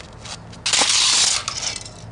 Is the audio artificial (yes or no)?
no